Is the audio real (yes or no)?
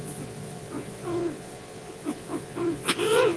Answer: no